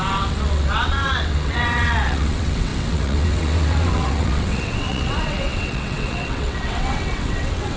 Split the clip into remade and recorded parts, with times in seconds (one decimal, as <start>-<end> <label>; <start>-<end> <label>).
0.0-7.8 remade

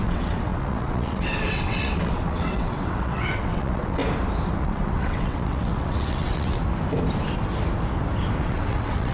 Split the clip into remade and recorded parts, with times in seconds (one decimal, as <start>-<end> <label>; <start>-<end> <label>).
0.0-4.0 remade; 4.0-4.6 recorded; 4.6-6.6 remade; 6.6-8.4 recorded; 8.4-9.1 remade

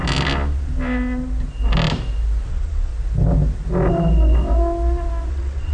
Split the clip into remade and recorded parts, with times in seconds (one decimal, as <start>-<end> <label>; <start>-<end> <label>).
0.0-2.5 recorded; 2.5-2.9 remade; 2.9-5.3 recorded; 5.3-5.7 remade

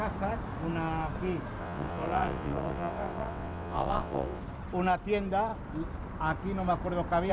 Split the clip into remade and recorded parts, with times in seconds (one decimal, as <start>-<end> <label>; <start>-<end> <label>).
0.0-1.6 recorded; 1.6-4.4 remade; 4.4-7.3 recorded

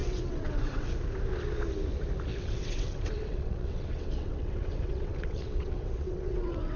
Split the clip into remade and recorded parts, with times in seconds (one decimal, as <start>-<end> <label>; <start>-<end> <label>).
0.0-0.9 remade; 0.9-2.3 recorded; 2.3-6.8 remade

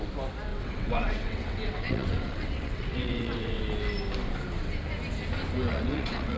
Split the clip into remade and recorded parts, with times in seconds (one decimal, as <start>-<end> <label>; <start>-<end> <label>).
0.0-0.5 recorded; 0.5-3.6 remade; 3.6-5.7 recorded; 5.7-6.4 remade